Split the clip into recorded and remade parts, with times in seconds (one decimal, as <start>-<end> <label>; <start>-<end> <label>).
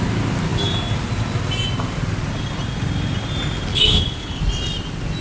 0.0-3.7 recorded; 3.7-4.4 remade; 4.4-5.2 recorded